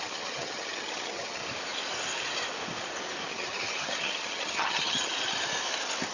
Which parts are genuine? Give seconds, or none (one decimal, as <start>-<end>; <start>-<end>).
1.4-3.3; 5.1-6.1